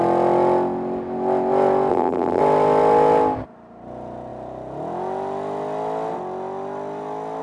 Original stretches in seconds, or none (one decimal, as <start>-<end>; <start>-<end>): 0.0-1.9; 2.4-7.4